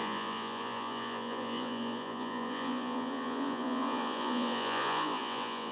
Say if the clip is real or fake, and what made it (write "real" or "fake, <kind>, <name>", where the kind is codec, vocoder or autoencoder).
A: fake, vocoder, Vocos